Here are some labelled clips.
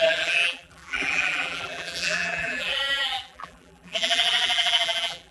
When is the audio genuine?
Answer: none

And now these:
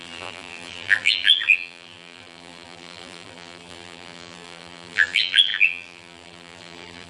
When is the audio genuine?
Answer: none

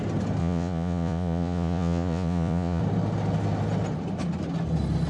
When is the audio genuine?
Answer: 0.0-0.4; 2.8-5.1

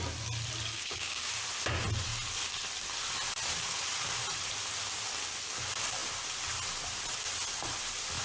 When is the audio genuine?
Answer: 0.0-0.7; 1.3-8.2